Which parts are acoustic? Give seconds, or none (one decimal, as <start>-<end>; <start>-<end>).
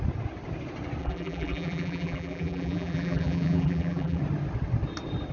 0.0-1.0; 4.2-5.3